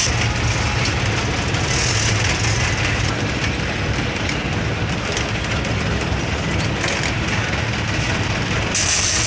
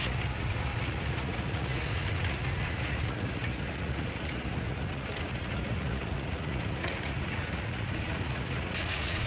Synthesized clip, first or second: second